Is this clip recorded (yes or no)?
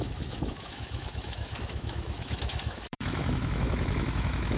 no